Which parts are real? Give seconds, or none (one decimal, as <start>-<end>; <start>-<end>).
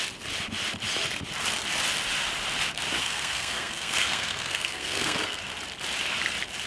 0.0-3.0; 5.4-6.7